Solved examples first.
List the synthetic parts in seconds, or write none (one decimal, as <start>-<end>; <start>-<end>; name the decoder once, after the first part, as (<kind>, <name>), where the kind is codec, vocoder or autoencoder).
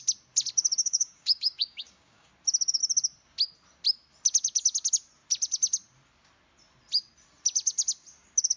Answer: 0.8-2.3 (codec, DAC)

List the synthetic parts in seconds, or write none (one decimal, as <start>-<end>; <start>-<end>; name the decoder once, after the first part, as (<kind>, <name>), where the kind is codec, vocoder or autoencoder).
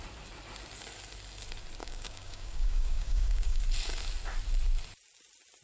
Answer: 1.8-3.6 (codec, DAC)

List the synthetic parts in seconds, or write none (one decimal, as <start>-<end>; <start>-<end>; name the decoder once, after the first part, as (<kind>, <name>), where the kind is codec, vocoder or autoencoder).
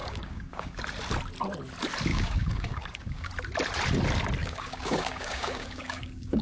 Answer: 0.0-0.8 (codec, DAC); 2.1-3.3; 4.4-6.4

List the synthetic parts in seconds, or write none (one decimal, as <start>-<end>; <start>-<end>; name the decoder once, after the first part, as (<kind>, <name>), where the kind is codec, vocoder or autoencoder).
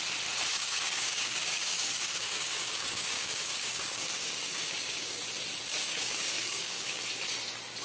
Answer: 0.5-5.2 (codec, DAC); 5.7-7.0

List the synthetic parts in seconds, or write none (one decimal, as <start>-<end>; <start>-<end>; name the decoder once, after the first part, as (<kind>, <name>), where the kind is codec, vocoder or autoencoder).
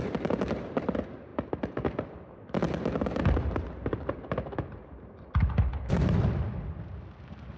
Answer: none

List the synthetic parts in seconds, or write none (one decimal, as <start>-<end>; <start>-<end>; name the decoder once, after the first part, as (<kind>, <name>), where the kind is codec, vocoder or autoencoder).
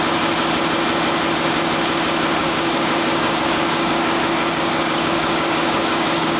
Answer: 2.4-6.4 (codec, DAC)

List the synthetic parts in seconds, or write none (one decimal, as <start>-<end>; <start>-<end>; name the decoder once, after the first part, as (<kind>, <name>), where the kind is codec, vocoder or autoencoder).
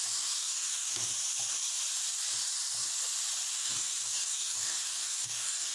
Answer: 0.0-1.1 (codec, DAC); 3.5-5.7